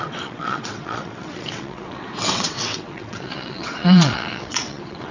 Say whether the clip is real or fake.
fake